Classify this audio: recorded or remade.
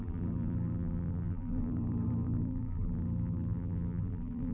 remade